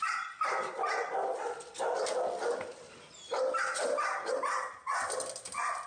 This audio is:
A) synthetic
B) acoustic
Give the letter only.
B